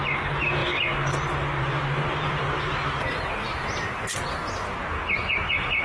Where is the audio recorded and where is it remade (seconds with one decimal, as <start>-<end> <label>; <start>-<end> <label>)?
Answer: 0.0-0.6 recorded; 0.6-2.6 remade; 2.6-5.8 recorded